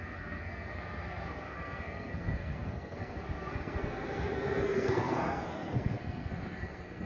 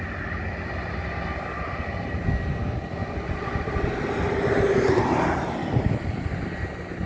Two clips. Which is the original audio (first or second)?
second